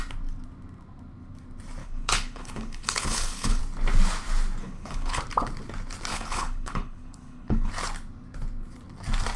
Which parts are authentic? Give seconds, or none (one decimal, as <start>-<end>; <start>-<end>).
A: 0.0-1.8; 3.6-4.6; 5.2-6.1; 7.7-9.4